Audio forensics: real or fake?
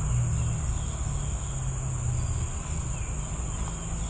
real